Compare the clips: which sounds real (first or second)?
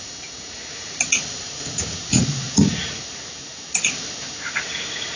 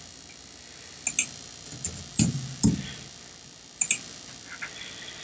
second